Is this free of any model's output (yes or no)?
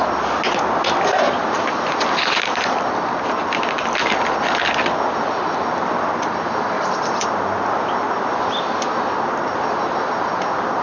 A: yes